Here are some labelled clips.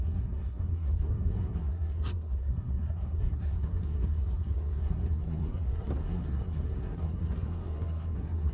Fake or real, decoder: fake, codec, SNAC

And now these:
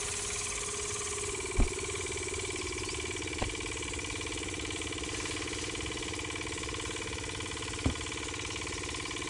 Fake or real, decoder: real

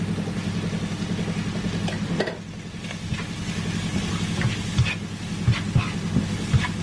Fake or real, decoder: real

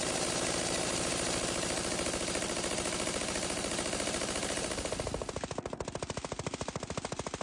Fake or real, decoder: real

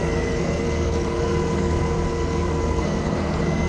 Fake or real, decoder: fake, codec, SNAC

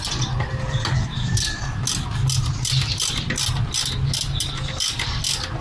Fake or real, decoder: real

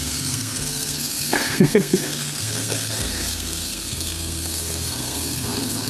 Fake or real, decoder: fake, codec, SNAC